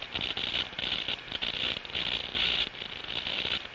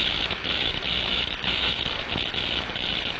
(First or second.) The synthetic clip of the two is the second